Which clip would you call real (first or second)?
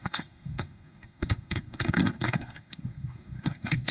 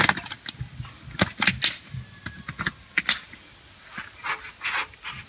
second